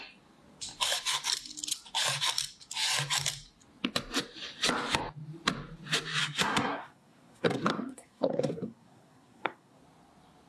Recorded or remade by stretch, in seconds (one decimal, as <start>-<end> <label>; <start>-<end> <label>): 0.0-6.2 recorded; 6.2-9.8 remade; 9.8-10.5 recorded